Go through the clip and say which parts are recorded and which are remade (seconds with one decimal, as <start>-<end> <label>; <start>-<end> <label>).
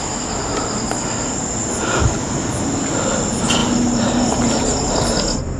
0.0-3.6 recorded; 3.6-4.9 remade; 4.9-5.6 recorded